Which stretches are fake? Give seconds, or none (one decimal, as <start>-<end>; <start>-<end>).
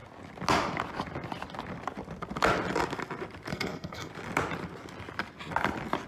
3.5-4.1